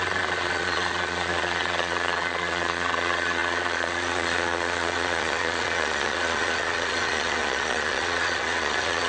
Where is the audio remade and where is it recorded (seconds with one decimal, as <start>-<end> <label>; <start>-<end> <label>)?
0.0-9.1 remade